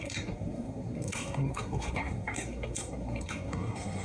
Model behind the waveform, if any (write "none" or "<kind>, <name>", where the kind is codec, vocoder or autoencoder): codec, SNAC